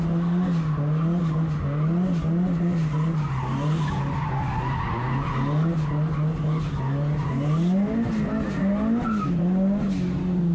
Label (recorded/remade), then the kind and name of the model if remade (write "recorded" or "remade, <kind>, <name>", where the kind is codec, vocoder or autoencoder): recorded